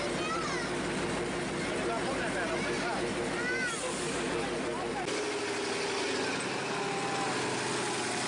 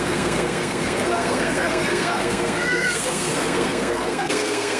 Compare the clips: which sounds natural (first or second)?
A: first